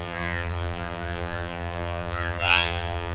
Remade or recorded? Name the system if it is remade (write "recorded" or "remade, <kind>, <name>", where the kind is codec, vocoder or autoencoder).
remade, vocoder, BigVGAN v2